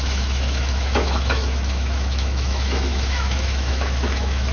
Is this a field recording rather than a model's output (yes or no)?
no